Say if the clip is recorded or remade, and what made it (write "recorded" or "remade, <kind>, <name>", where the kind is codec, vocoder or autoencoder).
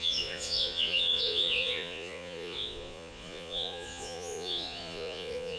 remade, vocoder, Vocos